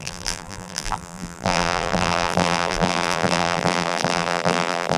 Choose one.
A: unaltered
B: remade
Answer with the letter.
B